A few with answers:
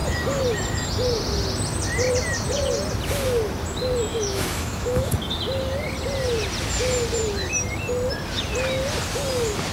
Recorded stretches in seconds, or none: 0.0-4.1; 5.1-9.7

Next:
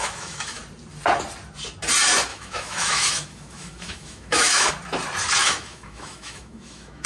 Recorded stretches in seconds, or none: 0.6-2.3; 4.7-5.4

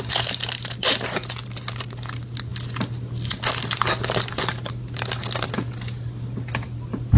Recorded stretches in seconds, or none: 0.0-7.2

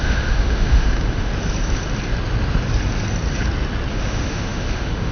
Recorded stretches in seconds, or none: 1.3-3.9

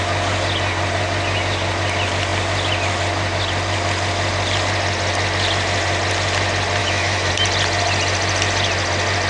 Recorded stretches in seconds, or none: 0.0-6.8; 7.3-9.3

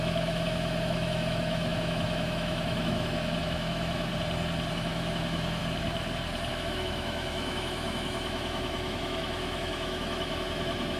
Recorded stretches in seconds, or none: 4.1-4.7; 5.6-6.5